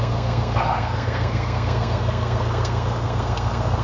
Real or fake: fake